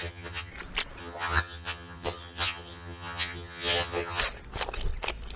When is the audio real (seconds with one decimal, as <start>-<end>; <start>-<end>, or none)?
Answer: 0.5-1.0; 4.2-5.4